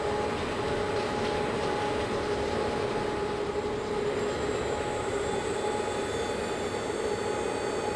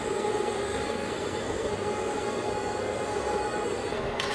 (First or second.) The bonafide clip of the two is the first